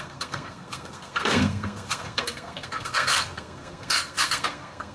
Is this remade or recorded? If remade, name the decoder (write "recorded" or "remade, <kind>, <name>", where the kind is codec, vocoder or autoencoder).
remade, codec, SNAC